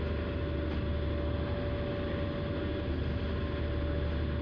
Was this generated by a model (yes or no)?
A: no